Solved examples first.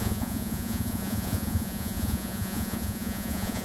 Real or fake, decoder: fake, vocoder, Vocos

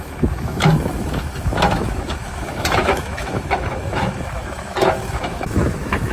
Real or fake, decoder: fake, autoencoder, DAC-VAE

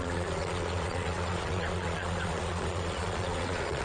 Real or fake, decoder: fake, vocoder, Vocos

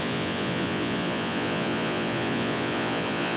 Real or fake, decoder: fake, vocoder, Vocos